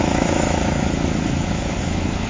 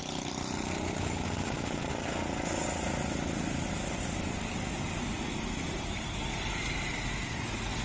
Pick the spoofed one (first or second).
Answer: first